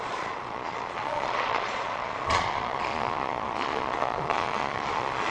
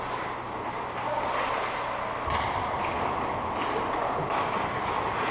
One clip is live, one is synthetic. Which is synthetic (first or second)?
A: first